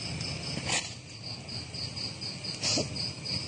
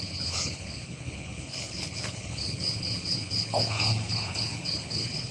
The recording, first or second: first